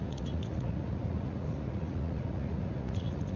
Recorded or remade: remade